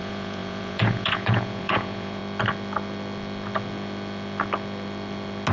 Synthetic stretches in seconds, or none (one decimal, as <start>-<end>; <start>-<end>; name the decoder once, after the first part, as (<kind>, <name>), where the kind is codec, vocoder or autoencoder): 0.0-2.2 (vocoder, Vocos)